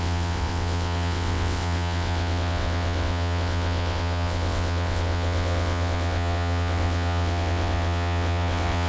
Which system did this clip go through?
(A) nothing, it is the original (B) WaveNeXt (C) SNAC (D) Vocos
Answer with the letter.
B